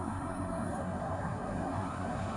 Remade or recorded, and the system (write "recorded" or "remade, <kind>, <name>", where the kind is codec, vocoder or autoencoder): remade, codec, SNAC